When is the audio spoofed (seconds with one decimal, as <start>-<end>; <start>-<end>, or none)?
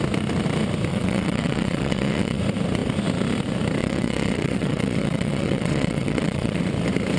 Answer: 0.9-2.4; 3.8-6.6